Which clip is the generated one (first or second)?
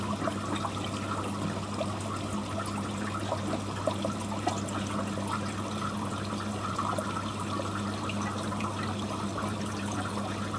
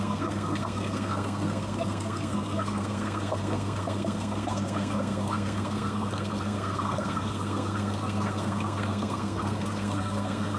second